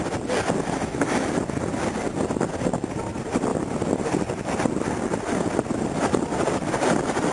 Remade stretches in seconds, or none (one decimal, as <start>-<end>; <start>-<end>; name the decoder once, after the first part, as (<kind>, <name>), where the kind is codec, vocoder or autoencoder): none